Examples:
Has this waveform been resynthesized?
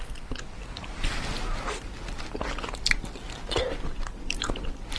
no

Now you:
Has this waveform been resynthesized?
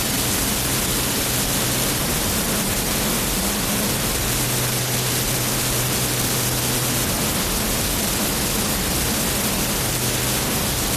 no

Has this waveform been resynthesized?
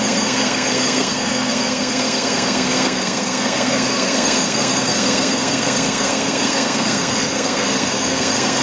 yes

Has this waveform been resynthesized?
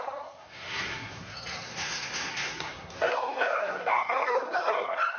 yes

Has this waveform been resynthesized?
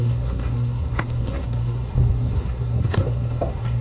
yes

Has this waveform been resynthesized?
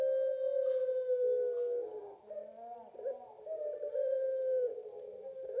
no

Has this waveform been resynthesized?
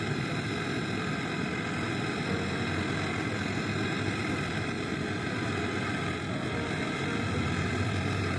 no